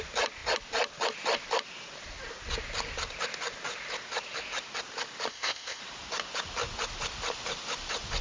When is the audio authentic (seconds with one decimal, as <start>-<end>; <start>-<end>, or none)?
0.0-5.3; 5.8-8.2